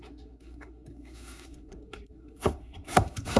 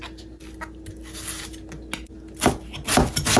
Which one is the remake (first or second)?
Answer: first